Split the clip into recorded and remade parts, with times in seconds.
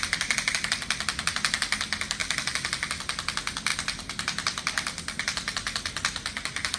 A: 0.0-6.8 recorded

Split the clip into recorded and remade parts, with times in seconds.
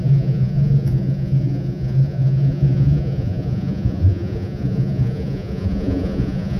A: 0.0-6.6 remade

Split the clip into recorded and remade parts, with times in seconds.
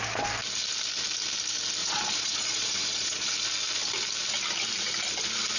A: 0.0-1.8 recorded; 1.8-3.3 remade; 3.3-5.6 recorded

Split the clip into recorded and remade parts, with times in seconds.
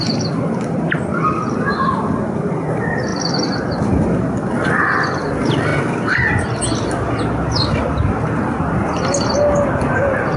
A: 0.0-10.4 recorded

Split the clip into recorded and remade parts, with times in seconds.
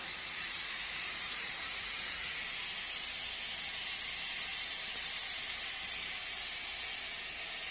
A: 0.0-2.4 remade; 2.4-7.7 recorded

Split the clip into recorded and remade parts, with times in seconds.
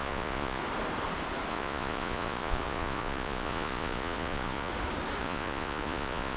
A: 0.0-0.6 remade; 0.6-1.5 recorded; 1.5-4.7 remade; 4.7-5.2 recorded; 5.2-6.4 remade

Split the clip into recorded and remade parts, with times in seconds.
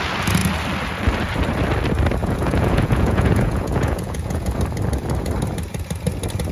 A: 0.0-2.2 recorded; 2.2-4.6 remade; 4.6-6.5 recorded